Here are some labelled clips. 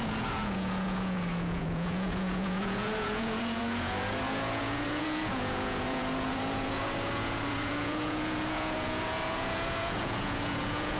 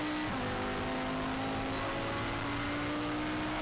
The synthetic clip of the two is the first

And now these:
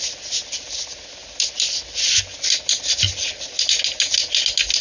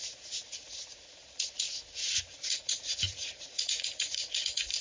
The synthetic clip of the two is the second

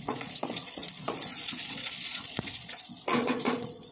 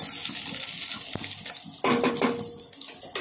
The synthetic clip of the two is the first